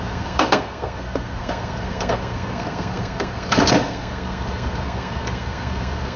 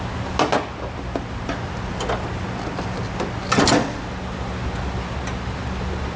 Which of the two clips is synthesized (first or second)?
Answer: first